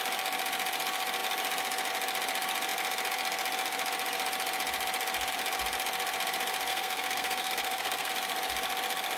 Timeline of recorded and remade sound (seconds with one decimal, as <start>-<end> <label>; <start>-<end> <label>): 0.0-6.7 recorded; 6.7-8.1 remade; 8.1-9.2 recorded